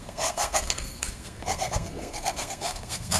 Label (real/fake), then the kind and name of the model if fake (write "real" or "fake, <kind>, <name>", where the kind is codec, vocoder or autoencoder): fake, codec, SNAC